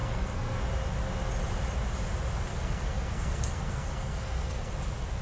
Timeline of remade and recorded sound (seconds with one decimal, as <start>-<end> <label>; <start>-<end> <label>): 0.0-0.6 remade; 0.6-2.5 recorded; 2.5-4.7 remade; 4.7-5.2 recorded